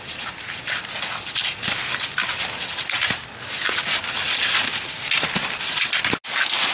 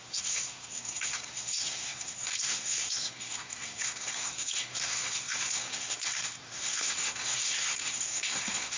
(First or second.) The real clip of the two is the first